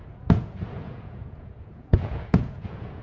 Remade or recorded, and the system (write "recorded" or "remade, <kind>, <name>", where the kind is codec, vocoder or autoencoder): remade, vocoder, Vocos